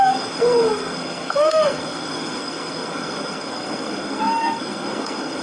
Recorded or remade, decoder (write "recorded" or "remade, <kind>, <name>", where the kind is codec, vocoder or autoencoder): remade, codec, SNAC